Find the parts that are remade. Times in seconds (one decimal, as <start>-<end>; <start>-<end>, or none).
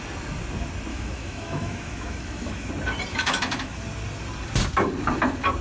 0.9-2.7; 3.1-3.8